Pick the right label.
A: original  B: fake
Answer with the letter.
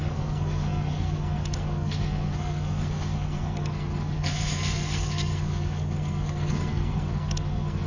B